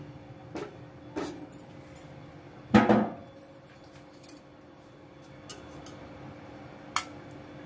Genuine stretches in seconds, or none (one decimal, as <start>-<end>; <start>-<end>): 0.0-7.7